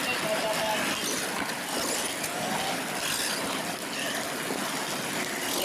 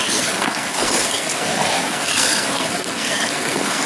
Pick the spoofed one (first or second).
second